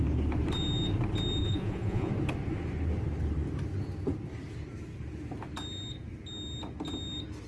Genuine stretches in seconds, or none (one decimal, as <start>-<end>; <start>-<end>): 0.0-1.4; 2.1-7.5